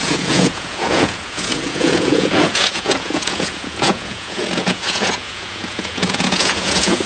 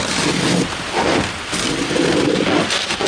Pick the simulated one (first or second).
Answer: first